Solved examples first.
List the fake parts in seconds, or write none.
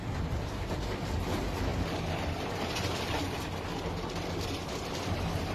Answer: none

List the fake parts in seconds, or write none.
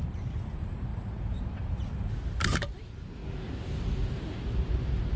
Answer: 0.0-3.2 (vocoder, BigVGAN v2); 4.1-5.2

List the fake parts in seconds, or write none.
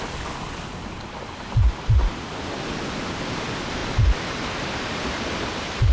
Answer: none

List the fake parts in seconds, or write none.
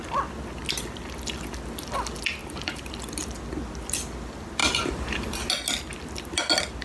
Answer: 2.4-2.9 (vocoder, BigVGAN v2); 4.6-5.5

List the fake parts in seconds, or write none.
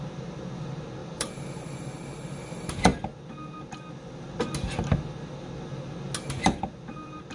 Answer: 1.0-2.0 (vocoder, BigVGAN v2)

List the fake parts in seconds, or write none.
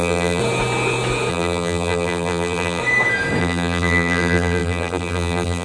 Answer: 0.0-0.4 (vocoder, BigVGAN v2); 1.3-2.8; 3.4-5.6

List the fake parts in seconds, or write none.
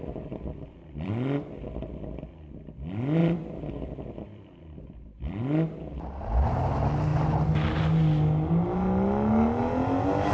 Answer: 0.0-1.1 (vocoder, BigVGAN v2); 3.2-5.6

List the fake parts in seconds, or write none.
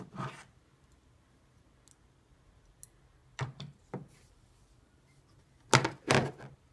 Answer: 3.2-5.2 (vocoder, BigVGAN v2)